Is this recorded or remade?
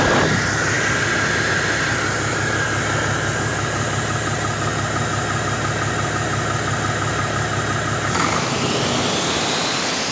recorded